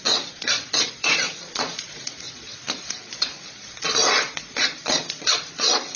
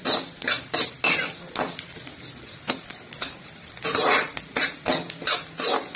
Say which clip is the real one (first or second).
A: second